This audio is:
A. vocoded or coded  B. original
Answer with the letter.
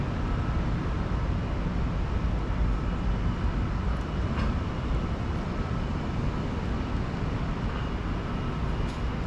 B